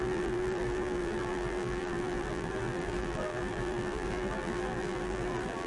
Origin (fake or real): fake